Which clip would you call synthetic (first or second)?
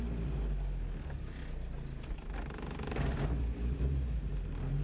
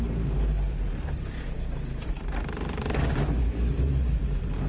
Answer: second